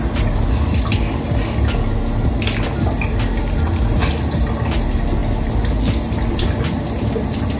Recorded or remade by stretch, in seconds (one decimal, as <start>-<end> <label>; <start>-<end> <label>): 0.0-7.6 recorded